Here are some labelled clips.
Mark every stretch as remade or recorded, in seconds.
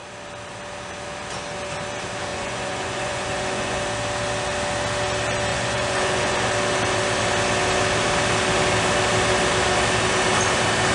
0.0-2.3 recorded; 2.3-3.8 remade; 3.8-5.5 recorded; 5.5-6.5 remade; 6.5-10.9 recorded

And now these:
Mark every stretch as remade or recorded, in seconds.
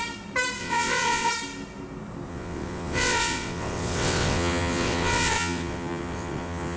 0.0-0.6 recorded; 0.6-1.3 remade; 1.3-2.3 recorded; 2.3-6.8 remade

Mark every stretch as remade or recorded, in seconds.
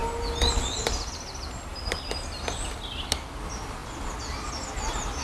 0.0-5.2 recorded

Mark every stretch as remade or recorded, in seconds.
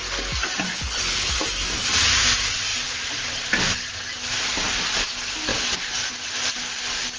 0.0-0.7 recorded; 0.7-1.3 remade; 1.3-7.2 recorded